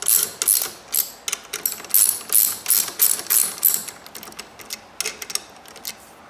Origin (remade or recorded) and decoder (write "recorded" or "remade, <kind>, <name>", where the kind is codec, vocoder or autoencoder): recorded